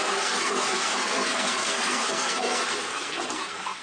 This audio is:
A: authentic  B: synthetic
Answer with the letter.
B